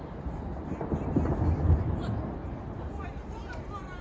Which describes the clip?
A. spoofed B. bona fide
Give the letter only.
B